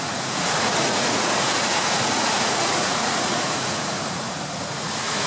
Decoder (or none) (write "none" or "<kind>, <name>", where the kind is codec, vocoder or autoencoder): vocoder, Vocos